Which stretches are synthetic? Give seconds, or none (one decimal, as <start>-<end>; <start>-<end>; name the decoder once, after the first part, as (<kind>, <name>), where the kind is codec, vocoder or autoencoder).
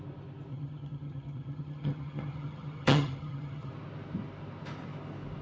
0.5-3.7 (vocoder, HiFi-GAN)